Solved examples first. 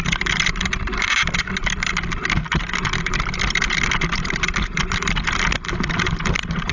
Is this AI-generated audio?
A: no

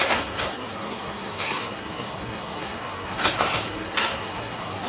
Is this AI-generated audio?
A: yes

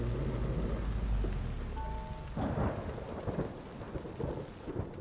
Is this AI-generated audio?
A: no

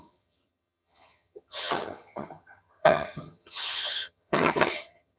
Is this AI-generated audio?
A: yes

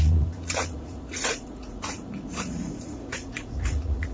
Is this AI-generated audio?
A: yes